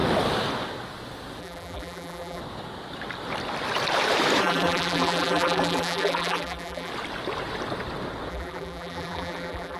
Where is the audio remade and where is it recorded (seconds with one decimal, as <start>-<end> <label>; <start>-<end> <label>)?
0.0-1.4 recorded; 1.4-2.4 remade; 2.4-4.4 recorded; 4.4-6.9 remade; 6.9-8.3 recorded; 8.3-9.8 remade